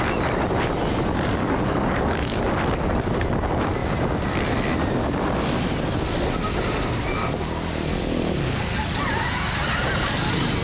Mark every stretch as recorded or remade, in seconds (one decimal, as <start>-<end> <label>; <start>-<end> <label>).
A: 0.0-1.4 recorded; 1.4-2.4 remade; 2.4-7.2 recorded; 7.2-9.0 remade; 9.0-10.6 recorded